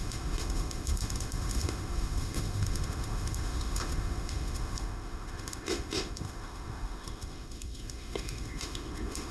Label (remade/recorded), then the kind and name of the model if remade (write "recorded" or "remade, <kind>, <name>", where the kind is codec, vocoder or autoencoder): remade, autoencoder, DAC-VAE